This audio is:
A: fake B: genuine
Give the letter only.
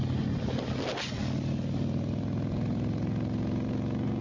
B